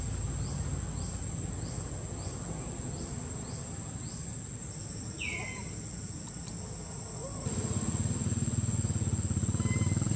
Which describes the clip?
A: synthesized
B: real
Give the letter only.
B